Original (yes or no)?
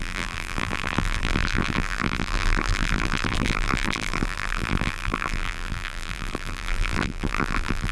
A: no